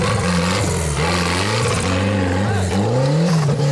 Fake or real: real